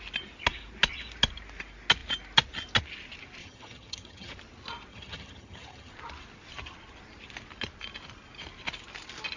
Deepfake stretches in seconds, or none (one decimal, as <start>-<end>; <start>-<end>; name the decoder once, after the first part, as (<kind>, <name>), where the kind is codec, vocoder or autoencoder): 3.4-4.3 (vocoder, HiFi-GAN); 4.9-5.9